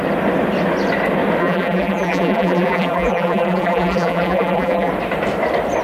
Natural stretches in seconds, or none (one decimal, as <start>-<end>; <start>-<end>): 0.0-1.4; 4.9-5.8